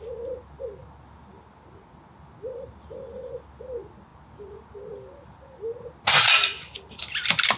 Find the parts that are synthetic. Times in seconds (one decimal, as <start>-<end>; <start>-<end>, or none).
none